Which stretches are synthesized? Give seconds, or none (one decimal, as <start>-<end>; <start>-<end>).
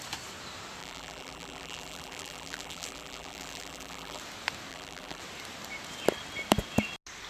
0.8-4.2; 4.7-5.2